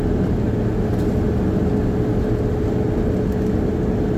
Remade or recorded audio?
recorded